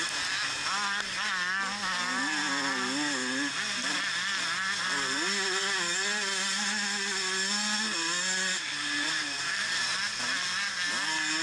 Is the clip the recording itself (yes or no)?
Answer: yes